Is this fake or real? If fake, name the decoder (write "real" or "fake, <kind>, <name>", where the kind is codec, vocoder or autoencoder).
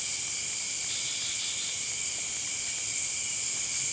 real